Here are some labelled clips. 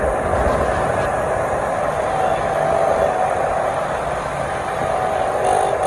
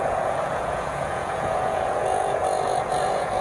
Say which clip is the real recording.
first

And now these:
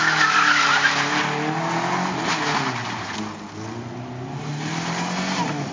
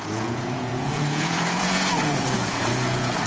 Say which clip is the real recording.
first